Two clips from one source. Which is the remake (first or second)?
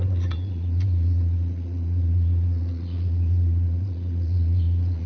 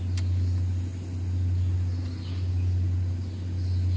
first